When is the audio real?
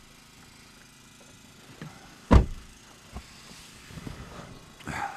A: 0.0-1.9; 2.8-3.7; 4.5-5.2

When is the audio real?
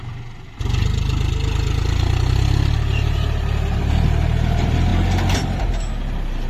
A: 0.0-6.5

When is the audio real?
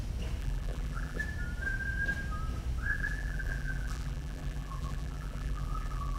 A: 0.0-0.4; 1.2-2.9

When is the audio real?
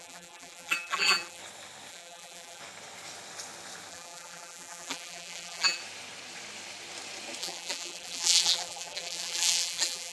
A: 1.4-1.9; 2.6-3.9; 5.8-7.4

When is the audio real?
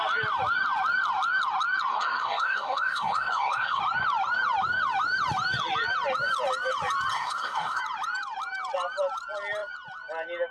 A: 0.0-1.9; 3.8-7.1; 7.8-10.5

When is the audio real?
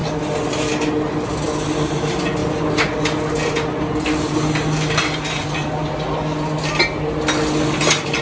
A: 0.0-8.2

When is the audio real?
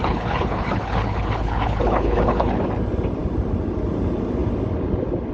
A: 2.4-5.3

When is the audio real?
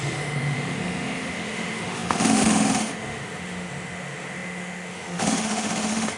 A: none